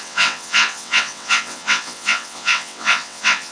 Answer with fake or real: fake